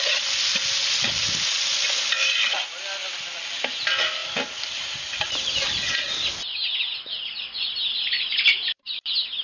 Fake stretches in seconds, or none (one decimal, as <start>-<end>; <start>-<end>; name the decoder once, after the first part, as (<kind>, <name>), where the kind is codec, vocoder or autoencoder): none